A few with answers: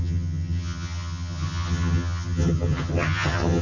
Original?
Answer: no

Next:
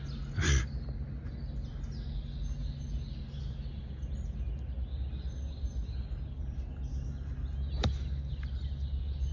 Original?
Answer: yes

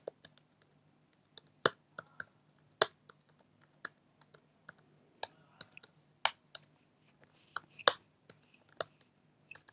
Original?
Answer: yes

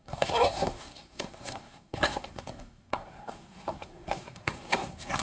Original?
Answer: no